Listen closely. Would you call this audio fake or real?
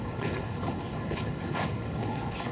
fake